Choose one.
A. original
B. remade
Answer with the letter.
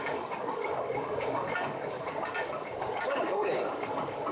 B